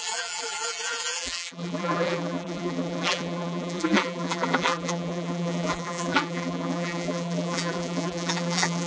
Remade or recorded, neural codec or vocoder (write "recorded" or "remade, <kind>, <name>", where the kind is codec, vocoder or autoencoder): remade, vocoder, BigVGAN v2